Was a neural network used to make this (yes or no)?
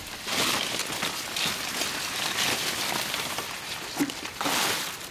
no